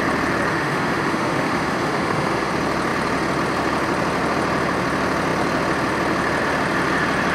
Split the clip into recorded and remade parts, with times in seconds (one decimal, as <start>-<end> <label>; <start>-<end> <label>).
0.0-0.5 recorded; 0.5-2.5 remade; 2.5-7.3 recorded